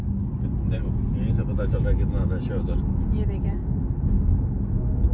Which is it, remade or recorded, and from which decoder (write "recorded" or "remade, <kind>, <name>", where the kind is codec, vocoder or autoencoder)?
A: recorded